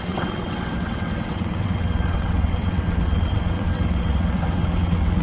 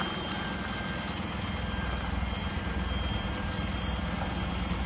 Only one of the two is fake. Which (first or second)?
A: first